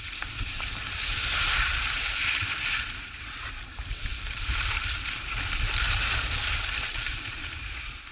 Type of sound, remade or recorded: remade